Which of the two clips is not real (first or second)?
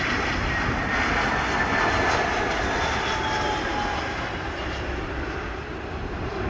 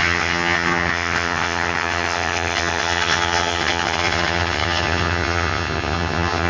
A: second